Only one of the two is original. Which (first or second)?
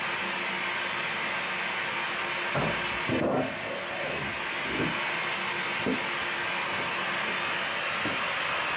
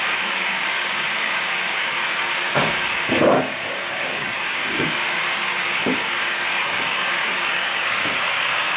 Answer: first